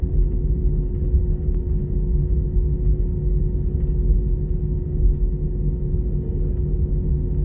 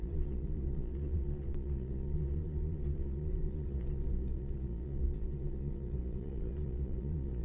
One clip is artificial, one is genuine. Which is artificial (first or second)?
second